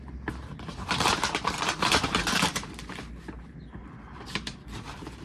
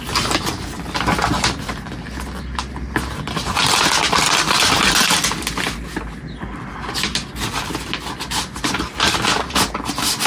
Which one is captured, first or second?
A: second